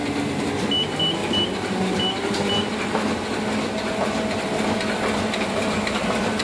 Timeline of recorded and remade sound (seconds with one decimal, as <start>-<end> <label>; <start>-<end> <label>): 0.0-0.7 remade; 0.7-5.6 recorded; 5.6-6.4 remade